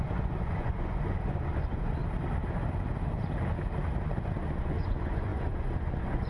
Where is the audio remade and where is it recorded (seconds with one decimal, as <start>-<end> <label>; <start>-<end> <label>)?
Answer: 0.0-2.0 remade; 2.0-4.4 recorded; 4.4-6.3 remade